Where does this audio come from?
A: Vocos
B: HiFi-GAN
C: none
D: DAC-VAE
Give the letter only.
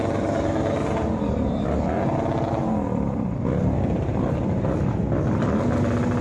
C